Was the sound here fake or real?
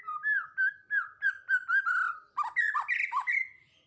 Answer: real